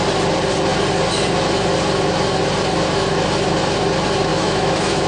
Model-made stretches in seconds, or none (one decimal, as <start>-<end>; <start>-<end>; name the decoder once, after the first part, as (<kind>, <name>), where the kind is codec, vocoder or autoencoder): 4.3-5.1 (autoencoder, DAC-VAE)